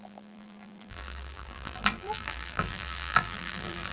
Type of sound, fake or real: fake